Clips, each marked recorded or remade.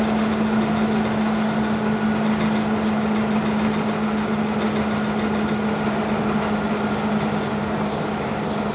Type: recorded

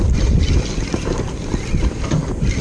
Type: recorded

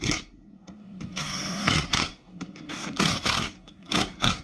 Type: remade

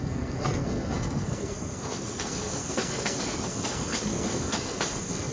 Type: remade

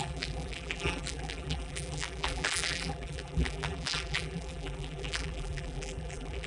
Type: remade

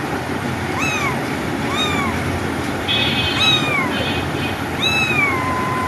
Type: remade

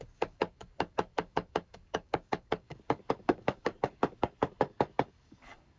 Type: remade